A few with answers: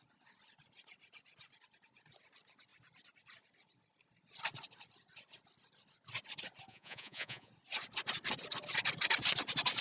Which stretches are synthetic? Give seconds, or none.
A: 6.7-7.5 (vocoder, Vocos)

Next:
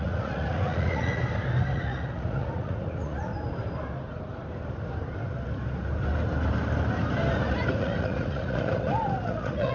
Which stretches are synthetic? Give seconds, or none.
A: 0.0-1.2 (vocoder, Vocos); 1.7-3.3; 7.8-9.7

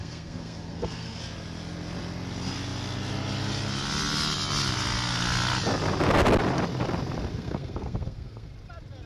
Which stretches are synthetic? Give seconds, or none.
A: 0.0-1.2 (codec, SNAC); 7.3-8.5